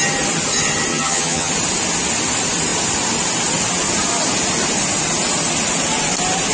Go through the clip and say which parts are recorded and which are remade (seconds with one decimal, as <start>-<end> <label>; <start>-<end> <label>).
0.0-0.9 recorded; 0.9-1.5 remade; 1.5-6.5 recorded